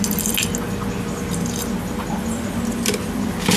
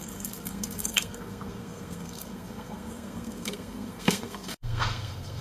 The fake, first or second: second